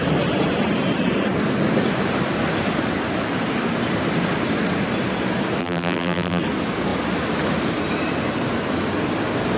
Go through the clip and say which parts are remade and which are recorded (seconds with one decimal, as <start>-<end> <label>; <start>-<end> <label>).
0.0-5.6 recorded; 5.6-6.4 remade; 6.4-9.6 recorded